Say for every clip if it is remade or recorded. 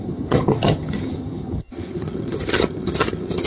remade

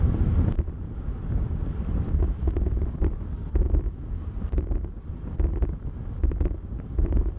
recorded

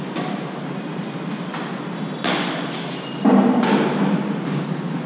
recorded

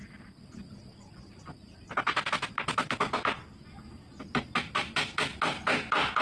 recorded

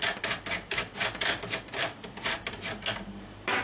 recorded